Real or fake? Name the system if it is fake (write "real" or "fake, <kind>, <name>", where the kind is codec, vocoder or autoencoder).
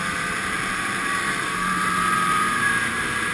fake, vocoder, BigVGAN v2